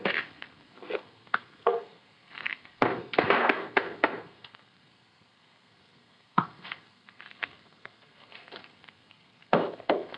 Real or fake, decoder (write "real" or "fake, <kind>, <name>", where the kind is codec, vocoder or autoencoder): fake, codec, SNAC